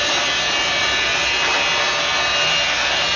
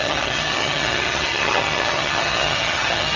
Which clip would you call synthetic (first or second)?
second